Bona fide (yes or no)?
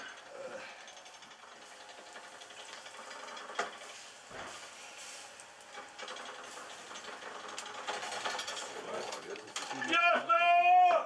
yes